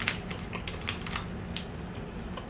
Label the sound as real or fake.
fake